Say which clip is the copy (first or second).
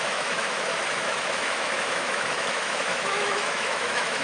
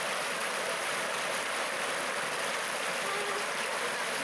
first